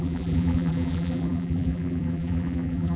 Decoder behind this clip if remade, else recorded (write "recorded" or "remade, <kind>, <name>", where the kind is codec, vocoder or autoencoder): remade, vocoder, BigVGAN v2